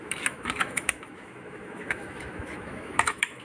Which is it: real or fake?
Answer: fake